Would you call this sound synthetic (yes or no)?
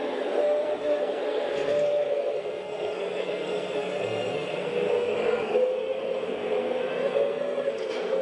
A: yes